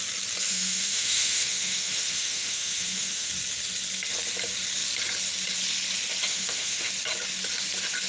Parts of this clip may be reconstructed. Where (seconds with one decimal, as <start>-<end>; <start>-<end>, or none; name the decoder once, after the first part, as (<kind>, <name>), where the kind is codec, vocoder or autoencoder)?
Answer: 0.5-3.3 (autoencoder, DAC-VAE); 6.3-6.9